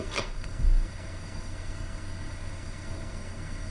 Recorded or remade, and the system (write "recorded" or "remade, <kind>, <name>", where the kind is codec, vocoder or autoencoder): remade, codec, SNAC